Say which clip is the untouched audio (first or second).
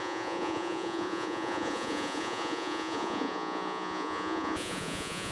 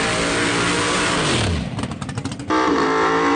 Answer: second